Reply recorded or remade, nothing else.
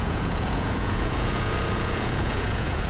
remade